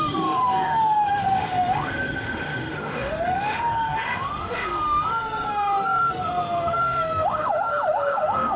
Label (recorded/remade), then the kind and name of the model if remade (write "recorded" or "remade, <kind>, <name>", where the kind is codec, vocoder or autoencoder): remade, autoencoder, DAC-VAE